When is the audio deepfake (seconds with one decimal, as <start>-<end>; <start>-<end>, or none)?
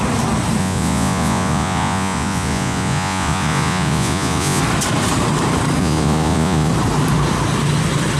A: 0.6-4.6; 5.8-6.7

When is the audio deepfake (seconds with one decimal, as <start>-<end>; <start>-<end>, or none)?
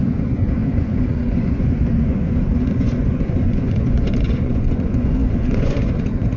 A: 0.0-6.4